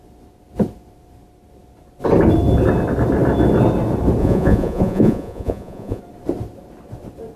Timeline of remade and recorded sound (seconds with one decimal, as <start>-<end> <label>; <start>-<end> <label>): 0.0-4.2 recorded; 4.2-6.0 remade; 6.0-7.4 recorded